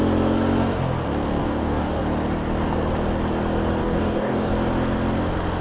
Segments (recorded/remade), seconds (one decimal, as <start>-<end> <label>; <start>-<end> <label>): 0.0-1.4 recorded; 1.4-2.0 remade; 2.0-3.8 recorded; 3.8-4.5 remade; 4.5-5.6 recorded